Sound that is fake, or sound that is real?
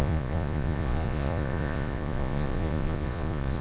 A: fake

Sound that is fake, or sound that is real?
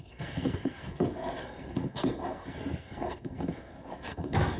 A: fake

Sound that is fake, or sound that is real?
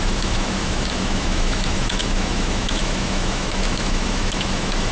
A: fake